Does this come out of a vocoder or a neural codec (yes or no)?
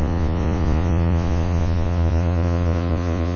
yes